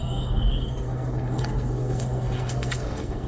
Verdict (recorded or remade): remade